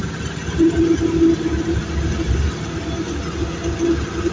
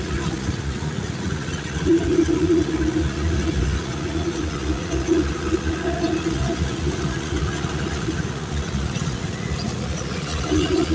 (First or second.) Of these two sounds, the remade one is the second